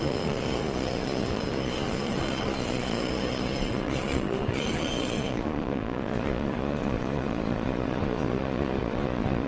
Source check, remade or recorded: remade